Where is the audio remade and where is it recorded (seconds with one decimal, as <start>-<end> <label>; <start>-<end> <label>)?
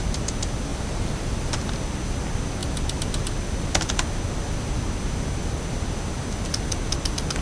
0.0-0.7 recorded; 0.7-1.7 remade; 1.7-7.4 recorded